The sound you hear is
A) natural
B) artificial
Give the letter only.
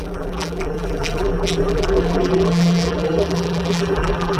B